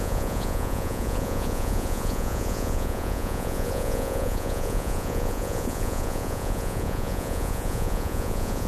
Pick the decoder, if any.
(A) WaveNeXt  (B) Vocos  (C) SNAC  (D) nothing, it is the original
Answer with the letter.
B